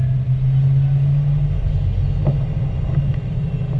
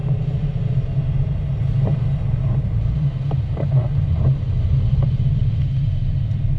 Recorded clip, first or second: first